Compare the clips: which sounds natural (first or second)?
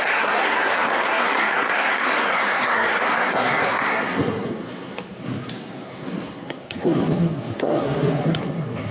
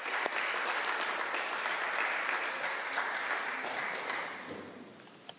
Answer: second